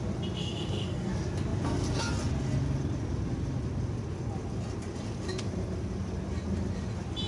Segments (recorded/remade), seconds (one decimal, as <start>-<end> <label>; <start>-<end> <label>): 0.0-0.4 recorded; 0.4-1.1 remade; 1.1-7.3 recorded